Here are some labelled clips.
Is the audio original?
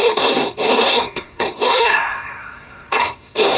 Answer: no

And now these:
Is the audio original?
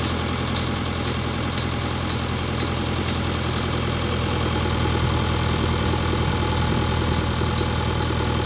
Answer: yes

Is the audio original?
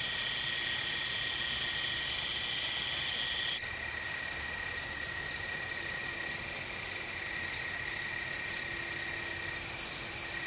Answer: yes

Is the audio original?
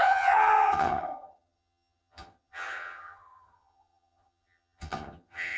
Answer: no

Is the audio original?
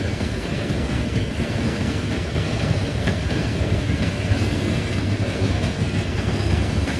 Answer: no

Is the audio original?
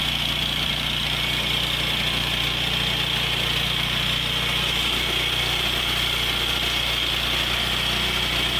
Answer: yes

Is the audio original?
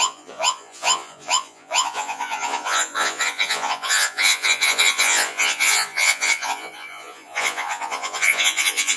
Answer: no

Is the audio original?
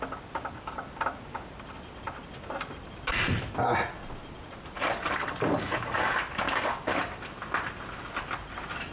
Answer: yes